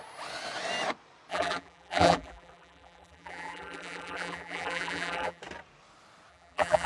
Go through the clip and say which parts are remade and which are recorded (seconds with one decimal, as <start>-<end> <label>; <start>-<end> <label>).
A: 0.0-1.3 recorded; 1.3-5.4 remade; 5.4-6.3 recorded; 6.3-6.9 remade

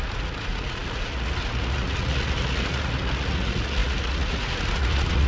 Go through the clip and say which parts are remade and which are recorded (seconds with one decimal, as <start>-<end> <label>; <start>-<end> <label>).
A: 0.0-5.3 remade

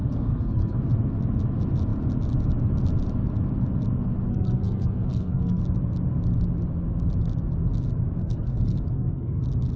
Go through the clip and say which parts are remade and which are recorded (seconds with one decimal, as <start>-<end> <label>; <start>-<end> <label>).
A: 0.0-0.8 remade; 0.8-4.3 recorded; 4.3-5.6 remade; 5.6-8.2 recorded; 8.2-9.4 remade; 9.4-9.8 recorded

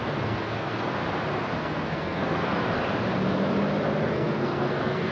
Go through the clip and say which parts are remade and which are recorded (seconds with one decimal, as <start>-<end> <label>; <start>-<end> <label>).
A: 0.0-1.0 remade; 1.0-1.6 recorded; 1.6-2.8 remade; 2.8-4.1 recorded; 4.1-5.1 remade

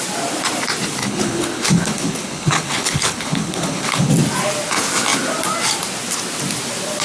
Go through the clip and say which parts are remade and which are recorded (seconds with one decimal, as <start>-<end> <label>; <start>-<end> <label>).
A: 0.0-1.0 recorded; 1.0-4.1 remade; 4.1-7.0 recorded